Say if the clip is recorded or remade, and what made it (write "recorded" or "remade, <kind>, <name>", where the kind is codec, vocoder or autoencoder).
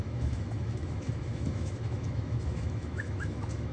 remade, autoencoder, DAC-VAE